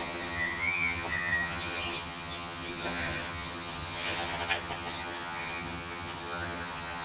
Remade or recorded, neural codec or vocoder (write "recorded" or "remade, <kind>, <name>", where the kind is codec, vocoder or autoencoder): remade, vocoder, HiFi-GAN